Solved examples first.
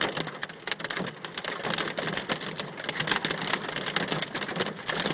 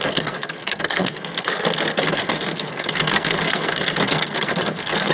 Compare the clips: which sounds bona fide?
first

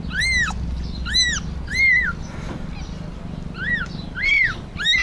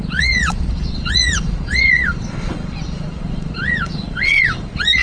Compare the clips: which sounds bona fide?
first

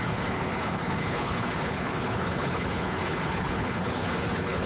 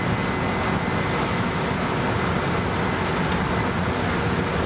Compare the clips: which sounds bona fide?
second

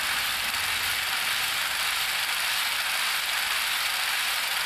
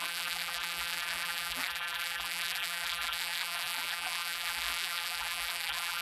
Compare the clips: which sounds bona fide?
first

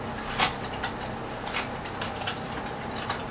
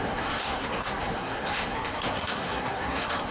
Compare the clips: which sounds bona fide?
first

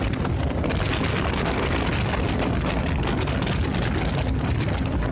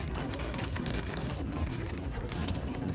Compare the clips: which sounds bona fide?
first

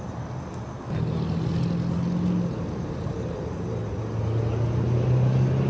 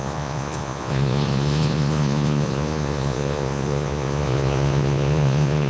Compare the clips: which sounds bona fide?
first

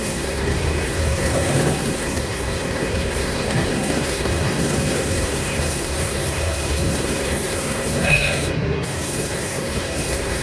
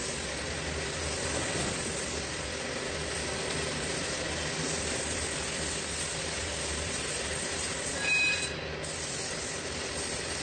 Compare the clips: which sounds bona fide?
second